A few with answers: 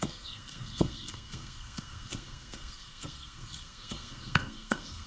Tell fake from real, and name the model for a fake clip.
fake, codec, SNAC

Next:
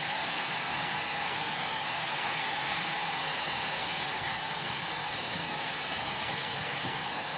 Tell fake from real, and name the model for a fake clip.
fake, codec, SNAC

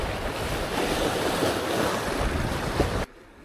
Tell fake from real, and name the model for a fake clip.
real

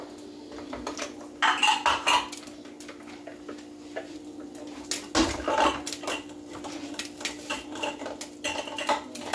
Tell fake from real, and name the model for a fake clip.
real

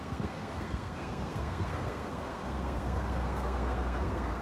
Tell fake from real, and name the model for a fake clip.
fake, codec, SNAC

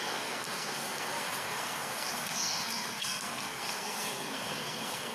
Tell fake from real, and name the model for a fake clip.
fake, codec, SNAC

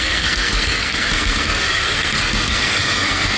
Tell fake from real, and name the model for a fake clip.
fake, codec, SNAC